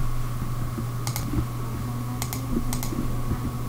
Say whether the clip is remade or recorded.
recorded